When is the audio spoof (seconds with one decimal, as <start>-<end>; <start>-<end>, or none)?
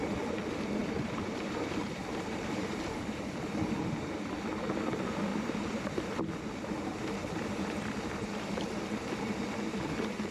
0.8-3.2; 5.3-6.2; 7.2-8.8